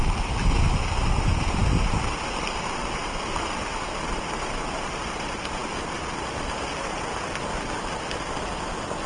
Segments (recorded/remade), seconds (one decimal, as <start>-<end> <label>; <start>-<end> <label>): 0.0-9.1 recorded